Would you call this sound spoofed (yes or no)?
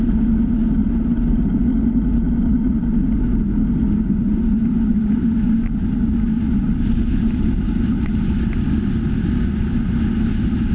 no